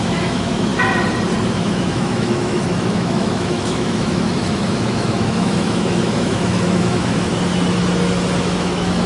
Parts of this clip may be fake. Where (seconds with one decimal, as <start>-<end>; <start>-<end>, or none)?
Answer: 0.0-0.7; 1.4-7.3; 8.4-9.1